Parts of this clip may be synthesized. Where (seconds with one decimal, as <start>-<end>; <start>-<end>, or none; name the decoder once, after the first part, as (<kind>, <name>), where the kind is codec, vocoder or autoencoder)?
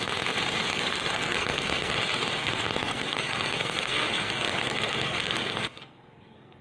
0.7-2.0 (codec, SNAC); 2.4-6.6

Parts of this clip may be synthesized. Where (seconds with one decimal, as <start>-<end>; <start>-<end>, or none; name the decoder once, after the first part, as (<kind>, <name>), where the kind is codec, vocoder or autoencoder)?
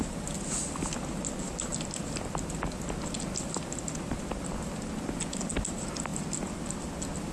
none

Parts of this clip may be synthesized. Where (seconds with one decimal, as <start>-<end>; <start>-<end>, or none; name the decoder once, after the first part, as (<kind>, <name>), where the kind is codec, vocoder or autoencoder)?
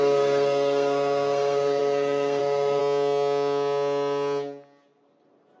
0.0-2.8 (codec, SNAC)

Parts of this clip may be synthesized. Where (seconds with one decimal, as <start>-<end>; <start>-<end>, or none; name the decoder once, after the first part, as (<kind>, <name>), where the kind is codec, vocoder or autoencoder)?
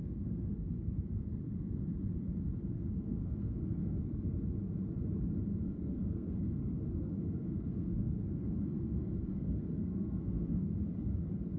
0.0-1.0 (codec, SNAC); 2.7-4.0; 5.5-10.7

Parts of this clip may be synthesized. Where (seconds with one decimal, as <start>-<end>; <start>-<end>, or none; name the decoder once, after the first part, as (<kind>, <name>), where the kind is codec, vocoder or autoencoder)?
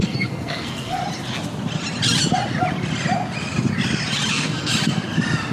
0.0-1.0 (codec, SNAC); 4.3-4.7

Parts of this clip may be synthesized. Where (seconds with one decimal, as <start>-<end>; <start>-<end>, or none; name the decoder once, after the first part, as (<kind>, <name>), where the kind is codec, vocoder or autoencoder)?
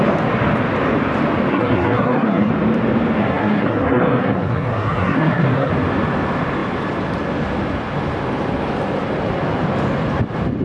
1.5-2.5 (codec, SNAC); 3.2-5.7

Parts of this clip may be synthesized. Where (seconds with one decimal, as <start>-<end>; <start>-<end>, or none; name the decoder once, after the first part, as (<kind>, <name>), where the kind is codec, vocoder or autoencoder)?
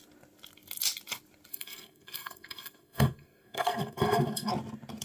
1.5-4.5 (codec, SNAC)